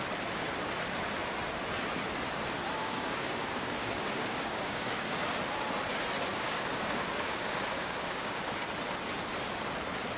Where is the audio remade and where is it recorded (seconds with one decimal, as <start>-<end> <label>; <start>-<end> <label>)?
0.0-2.8 recorded; 2.8-5.3 remade; 5.3-6.3 recorded; 6.3-8.4 remade; 8.4-10.2 recorded